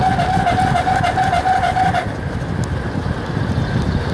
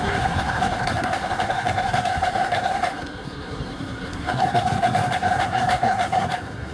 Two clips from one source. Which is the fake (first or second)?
second